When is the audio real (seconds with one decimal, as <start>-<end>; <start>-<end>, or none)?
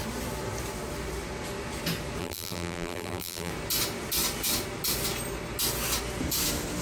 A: 0.0-2.2; 3.5-6.8